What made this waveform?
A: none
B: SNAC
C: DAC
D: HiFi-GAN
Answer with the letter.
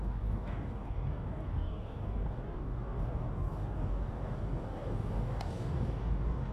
C